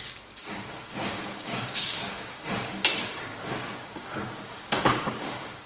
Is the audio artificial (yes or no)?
yes